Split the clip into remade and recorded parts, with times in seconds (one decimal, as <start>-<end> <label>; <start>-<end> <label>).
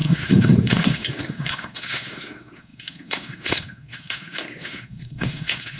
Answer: 0.0-5.8 remade